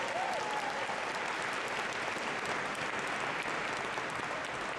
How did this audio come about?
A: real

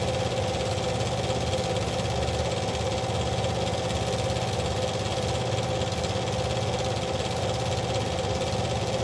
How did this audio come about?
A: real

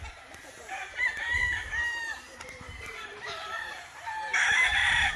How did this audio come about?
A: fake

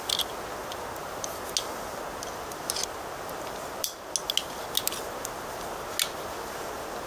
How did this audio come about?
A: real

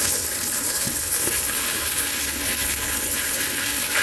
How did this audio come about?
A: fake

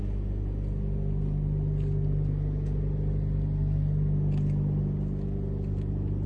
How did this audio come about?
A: real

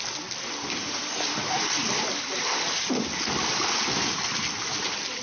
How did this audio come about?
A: real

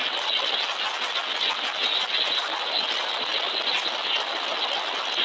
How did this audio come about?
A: real